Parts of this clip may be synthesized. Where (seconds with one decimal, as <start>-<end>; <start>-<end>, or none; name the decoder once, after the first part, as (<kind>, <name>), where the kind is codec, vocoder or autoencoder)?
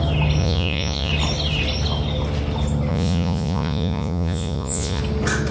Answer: 0.4-1.1 (vocoder, Vocos); 2.9-5.0